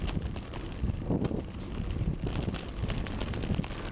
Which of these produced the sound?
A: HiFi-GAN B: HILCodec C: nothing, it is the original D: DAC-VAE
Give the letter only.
C